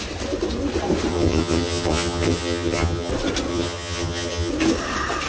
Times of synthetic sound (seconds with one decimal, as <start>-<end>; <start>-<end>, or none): 1.1-3.1; 3.5-4.5